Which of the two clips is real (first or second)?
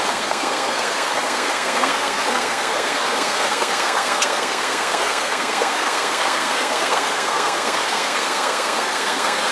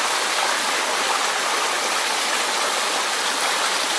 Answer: second